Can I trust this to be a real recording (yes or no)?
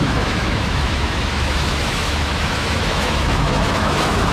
no